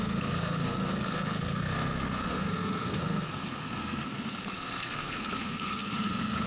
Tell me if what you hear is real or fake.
fake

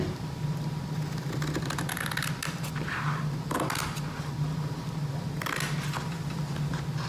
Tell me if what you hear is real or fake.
real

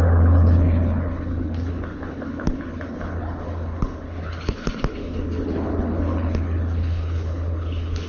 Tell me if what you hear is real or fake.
fake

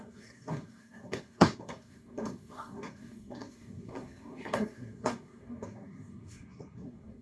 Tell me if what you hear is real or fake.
fake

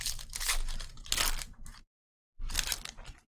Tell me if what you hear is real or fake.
real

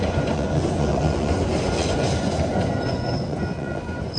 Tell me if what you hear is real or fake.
fake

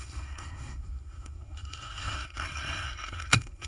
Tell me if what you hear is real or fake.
fake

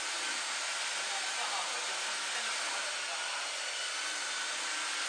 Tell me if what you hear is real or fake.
real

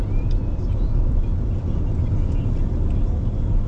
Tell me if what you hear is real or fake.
real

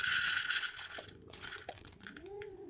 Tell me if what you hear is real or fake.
fake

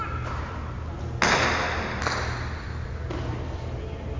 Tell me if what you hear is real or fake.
real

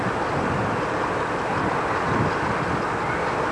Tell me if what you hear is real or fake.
real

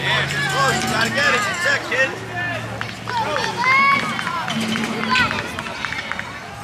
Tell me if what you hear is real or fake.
real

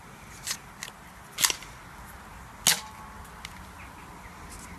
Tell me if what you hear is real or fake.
real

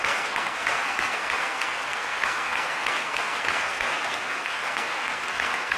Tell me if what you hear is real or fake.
fake